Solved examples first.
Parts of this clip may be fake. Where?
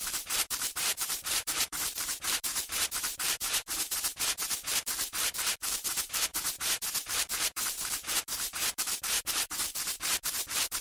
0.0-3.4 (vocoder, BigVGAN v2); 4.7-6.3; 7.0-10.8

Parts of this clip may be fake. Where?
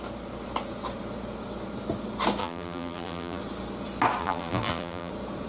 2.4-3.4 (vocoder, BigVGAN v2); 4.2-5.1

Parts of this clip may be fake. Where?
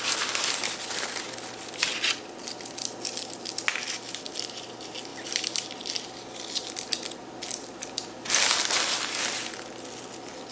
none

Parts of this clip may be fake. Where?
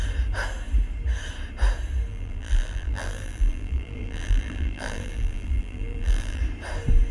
2.1-6.4 (vocoder, BigVGAN v2)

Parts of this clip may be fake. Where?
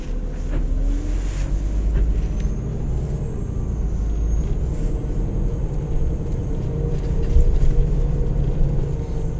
6.4-7.6 (vocoder, BigVGAN v2)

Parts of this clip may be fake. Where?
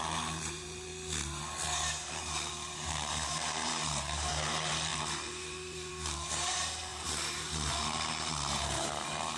0.0-0.9 (vocoder, BigVGAN v2); 1.8-9.4